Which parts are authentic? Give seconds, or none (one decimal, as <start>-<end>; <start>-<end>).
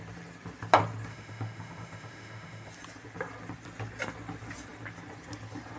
0.0-1.1; 2.7-5.8